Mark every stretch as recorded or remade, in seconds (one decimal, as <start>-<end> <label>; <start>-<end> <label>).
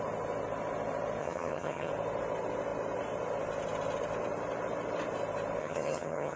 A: 0.0-1.2 recorded; 1.2-1.9 remade; 1.9-5.6 recorded; 5.6-6.4 remade